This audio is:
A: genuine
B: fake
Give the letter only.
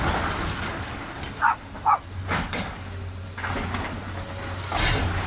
A